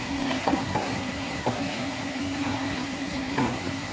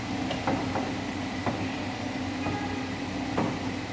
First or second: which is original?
second